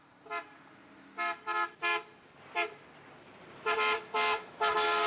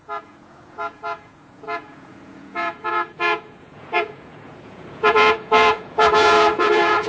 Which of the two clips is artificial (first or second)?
second